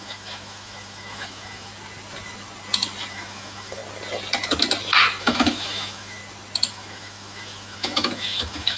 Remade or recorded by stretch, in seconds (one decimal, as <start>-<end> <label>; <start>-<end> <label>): 0.0-1.7 remade; 1.7-3.1 recorded; 3.1-3.8 remade; 3.8-5.2 recorded; 5.2-6.2 remade; 6.2-6.7 recorded; 6.7-8.8 remade